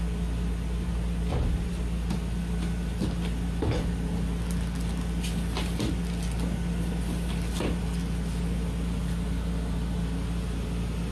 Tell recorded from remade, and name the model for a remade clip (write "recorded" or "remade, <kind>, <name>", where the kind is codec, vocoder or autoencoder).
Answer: recorded